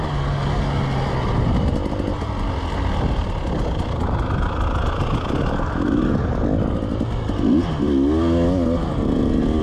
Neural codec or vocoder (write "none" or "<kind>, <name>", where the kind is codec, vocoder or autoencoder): none